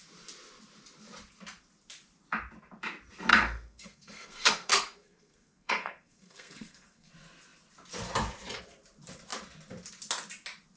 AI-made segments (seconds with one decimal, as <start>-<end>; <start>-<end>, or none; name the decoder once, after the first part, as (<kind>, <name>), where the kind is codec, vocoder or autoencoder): 3.3-7.1 (codec, SNAC)